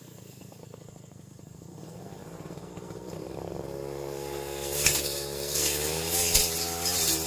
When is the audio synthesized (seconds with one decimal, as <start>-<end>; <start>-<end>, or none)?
0.0-6.4